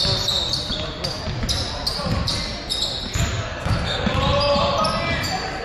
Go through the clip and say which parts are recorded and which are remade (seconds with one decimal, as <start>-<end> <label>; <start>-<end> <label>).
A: 0.0-3.4 recorded; 3.4-4.1 remade; 4.1-5.6 recorded